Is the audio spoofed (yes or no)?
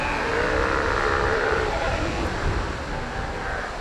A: no